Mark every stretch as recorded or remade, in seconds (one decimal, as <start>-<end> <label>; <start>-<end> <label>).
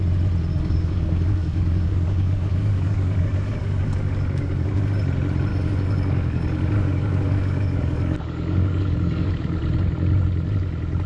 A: 0.0-0.5 recorded; 0.5-4.8 remade; 4.8-5.5 recorded; 5.5-9.3 remade; 9.3-11.1 recorded